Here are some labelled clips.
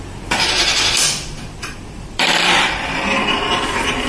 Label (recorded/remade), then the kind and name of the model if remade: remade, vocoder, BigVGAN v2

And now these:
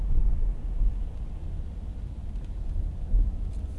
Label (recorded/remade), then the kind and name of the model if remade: recorded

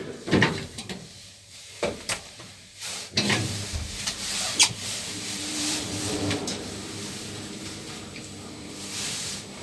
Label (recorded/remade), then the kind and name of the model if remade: remade, vocoder, BigVGAN v2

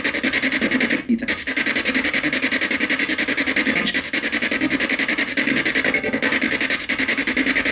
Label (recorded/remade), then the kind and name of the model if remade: recorded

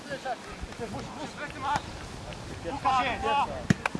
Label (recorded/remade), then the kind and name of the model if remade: recorded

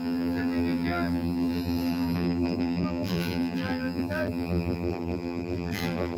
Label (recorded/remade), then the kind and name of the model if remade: remade, vocoder, BigVGAN v2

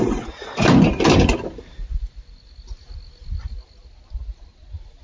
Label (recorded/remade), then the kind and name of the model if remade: recorded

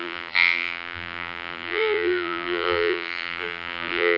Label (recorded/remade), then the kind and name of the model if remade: remade, vocoder, BigVGAN v2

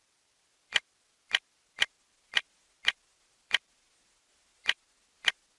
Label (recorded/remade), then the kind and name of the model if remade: recorded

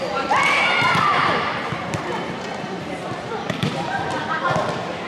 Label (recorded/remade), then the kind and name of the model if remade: remade, vocoder, BigVGAN v2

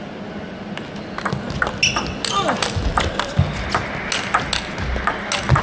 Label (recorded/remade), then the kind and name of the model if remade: recorded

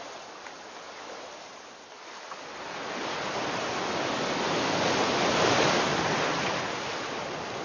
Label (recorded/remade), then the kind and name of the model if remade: recorded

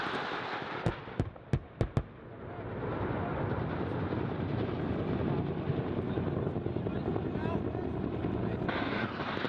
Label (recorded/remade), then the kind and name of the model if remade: recorded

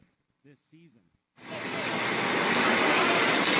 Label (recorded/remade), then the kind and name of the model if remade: recorded